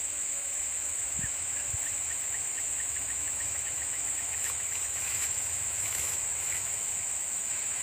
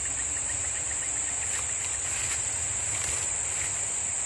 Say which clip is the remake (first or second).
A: first